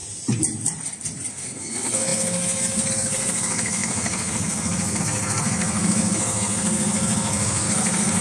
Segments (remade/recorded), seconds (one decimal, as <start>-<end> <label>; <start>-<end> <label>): 0.0-1.3 recorded; 1.3-8.2 remade